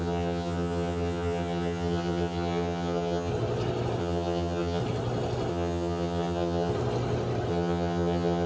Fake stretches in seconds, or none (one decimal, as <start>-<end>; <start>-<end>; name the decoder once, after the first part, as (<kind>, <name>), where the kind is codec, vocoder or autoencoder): 0.0-3.3 (vocoder, HiFi-GAN); 4.0-4.8; 5.5-6.7; 7.5-8.5

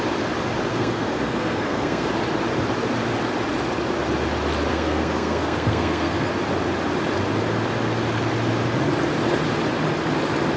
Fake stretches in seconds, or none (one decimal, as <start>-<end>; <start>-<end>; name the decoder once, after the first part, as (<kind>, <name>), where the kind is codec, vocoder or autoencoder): 0.7-2.1 (codec, SNAC); 4.7-6.3

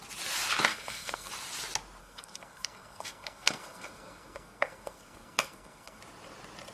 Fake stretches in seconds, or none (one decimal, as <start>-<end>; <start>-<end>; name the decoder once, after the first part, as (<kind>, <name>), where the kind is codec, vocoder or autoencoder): 0.7-1.3 (codec, SNAC); 2.0-6.0

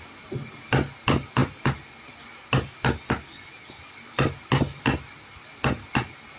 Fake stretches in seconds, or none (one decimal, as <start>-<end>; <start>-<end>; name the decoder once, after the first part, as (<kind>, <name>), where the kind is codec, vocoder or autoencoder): none

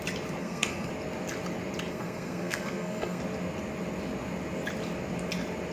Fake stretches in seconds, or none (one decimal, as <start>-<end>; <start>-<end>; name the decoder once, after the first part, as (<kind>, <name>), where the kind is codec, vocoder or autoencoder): 0.4-0.9 (codec, SNAC); 1.9-3.2

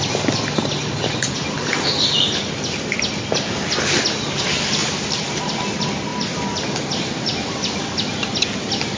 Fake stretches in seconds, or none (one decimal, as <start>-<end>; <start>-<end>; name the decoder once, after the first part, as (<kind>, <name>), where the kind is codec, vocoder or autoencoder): 4.8-5.5 (vocoder, BigVGAN v2)

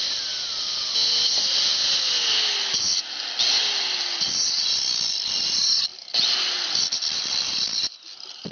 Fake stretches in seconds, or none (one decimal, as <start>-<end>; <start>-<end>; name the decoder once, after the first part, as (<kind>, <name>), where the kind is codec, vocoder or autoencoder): 0.0-1.7 (vocoder, BigVGAN v2); 5.1-8.5

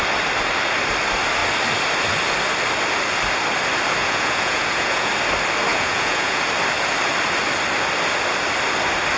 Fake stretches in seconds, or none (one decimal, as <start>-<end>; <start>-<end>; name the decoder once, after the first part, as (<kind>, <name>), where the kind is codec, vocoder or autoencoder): 4.0-5.1 (vocoder, Vocos); 5.7-6.5